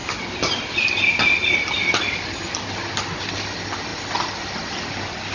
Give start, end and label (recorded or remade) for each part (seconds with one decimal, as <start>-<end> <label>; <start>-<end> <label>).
0.0-5.3 recorded

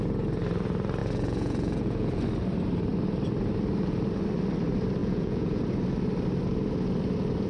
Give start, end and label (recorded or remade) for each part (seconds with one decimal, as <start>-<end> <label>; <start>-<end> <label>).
0.0-1.0 recorded; 1.0-2.2 remade; 2.2-5.0 recorded; 5.0-5.6 remade; 5.6-7.5 recorded

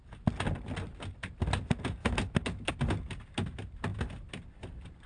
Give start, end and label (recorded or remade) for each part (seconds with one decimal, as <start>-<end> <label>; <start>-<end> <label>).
0.0-5.1 recorded

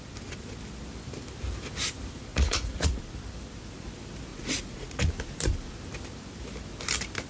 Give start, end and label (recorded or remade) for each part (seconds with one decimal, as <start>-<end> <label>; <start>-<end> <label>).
0.0-2.3 recorded; 2.3-3.0 remade; 3.0-4.3 recorded; 4.3-5.1 remade; 5.1-7.3 recorded